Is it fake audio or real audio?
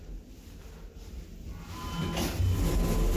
real